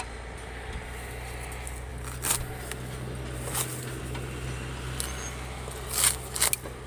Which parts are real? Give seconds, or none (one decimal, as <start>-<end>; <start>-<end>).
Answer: 0.0-6.9